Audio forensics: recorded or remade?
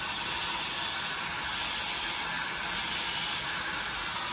recorded